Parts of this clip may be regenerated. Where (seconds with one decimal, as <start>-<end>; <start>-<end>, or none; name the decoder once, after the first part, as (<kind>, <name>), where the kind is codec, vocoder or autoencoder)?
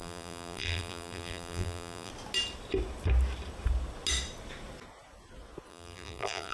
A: 0.0-2.1 (vocoder, BigVGAN v2); 5.7-6.5